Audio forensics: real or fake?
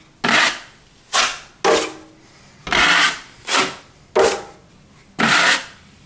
real